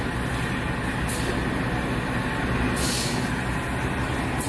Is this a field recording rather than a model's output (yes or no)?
yes